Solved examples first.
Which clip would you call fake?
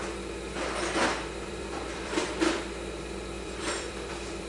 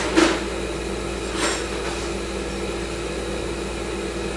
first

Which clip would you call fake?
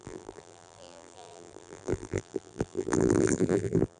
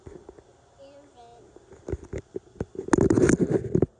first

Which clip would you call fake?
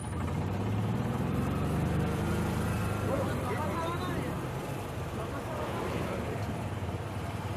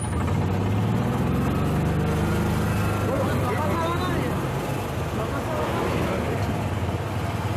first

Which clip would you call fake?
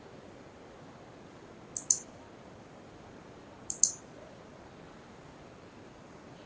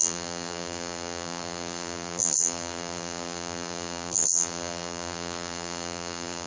second